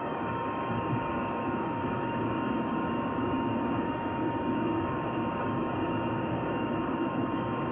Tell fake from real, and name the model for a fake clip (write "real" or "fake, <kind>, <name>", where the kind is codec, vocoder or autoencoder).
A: fake, codec, DAC